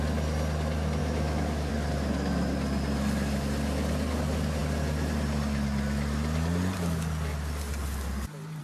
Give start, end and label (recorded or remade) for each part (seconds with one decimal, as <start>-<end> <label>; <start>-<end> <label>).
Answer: 0.0-1.0 recorded; 1.0-1.7 remade; 1.7-8.6 recorded